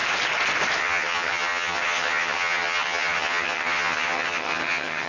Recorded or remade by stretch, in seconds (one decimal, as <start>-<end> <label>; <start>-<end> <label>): 0.0-0.8 recorded; 0.8-5.1 remade